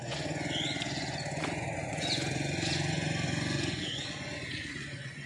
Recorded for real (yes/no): no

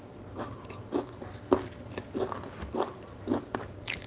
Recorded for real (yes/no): yes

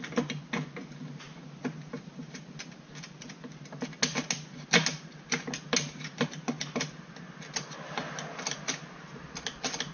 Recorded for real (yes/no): yes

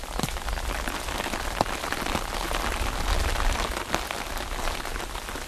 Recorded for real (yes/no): yes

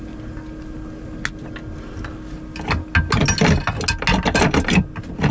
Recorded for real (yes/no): yes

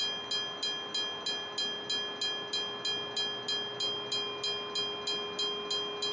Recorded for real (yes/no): yes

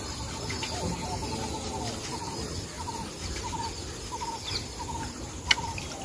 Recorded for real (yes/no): yes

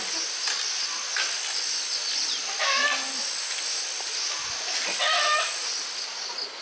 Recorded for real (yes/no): yes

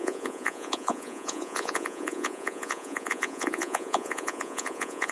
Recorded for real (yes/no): no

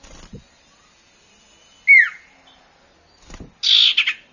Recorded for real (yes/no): yes